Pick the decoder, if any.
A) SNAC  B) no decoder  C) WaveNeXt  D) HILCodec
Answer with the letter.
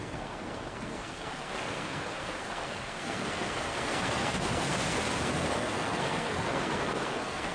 A